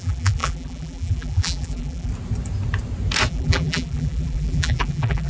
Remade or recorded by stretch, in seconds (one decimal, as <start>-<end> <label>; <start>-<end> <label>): 0.0-2.1 remade; 2.1-3.3 recorded; 3.3-5.3 remade